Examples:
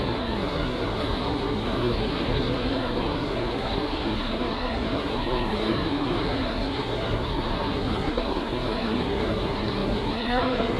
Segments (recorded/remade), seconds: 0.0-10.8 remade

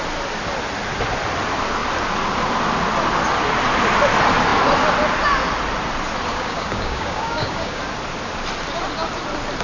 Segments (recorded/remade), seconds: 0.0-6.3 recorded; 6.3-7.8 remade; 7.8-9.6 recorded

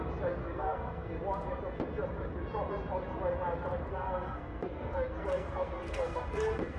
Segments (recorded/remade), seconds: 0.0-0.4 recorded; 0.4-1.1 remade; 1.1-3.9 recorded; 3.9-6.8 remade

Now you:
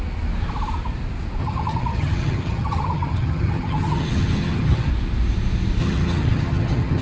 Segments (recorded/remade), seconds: 0.0-1.4 recorded; 1.4-4.9 remade; 4.9-5.8 recorded; 5.8-7.0 remade

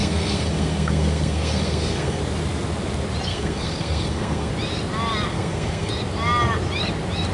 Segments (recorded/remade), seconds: 0.0-2.2 remade; 2.2-3.3 recorded; 3.3-4.5 remade; 4.5-5.3 recorded; 5.3-5.9 remade; 5.9-7.3 recorded

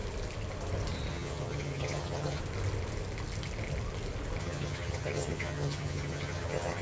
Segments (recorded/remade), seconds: 0.0-1.1 recorded; 1.1-2.4 remade; 2.4-4.4 recorded; 4.4-6.8 remade

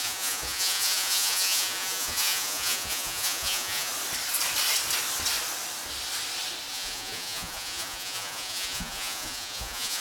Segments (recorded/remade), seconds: 0.0-3.9 remade; 3.9-6.7 recorded; 6.7-10.0 remade

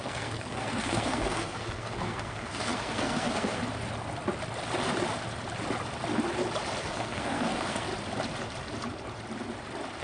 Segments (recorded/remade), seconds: 0.0-3.6 remade; 3.6-6.8 recorded; 6.8-7.9 remade; 7.9-10.0 recorded